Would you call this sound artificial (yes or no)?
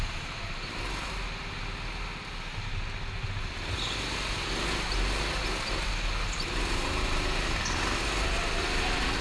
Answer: no